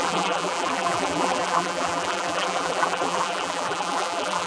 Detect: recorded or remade remade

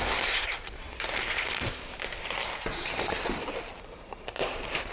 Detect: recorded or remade recorded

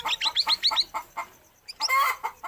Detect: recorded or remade recorded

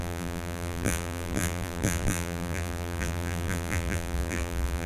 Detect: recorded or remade remade